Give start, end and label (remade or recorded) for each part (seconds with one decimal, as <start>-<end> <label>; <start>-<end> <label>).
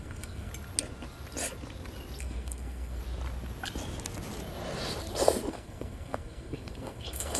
0.0-0.5 remade; 0.5-2.2 recorded; 2.2-3.0 remade; 3.0-5.5 recorded; 5.5-7.4 remade